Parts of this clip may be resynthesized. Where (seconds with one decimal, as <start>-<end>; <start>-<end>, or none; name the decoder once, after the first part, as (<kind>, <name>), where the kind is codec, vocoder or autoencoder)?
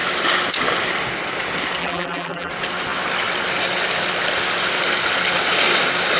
1.8-2.5 (vocoder, BigVGAN v2)